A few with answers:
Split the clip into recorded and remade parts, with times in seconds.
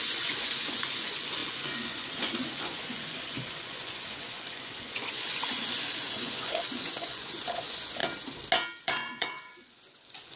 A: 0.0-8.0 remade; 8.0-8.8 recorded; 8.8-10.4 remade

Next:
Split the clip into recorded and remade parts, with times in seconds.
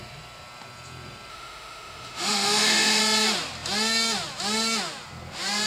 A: 0.0-1.3 recorded; 1.3-3.0 remade; 3.0-5.7 recorded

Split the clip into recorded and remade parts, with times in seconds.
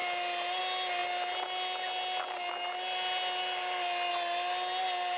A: 0.0-5.2 recorded